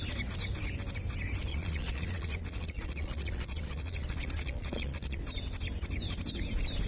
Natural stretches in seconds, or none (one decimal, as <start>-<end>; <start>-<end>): 0.0-1.5; 5.2-6.9